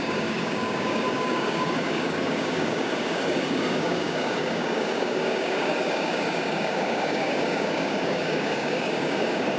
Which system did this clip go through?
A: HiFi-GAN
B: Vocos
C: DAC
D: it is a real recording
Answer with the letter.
C